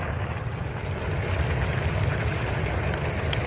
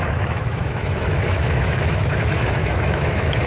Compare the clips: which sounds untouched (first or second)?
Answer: first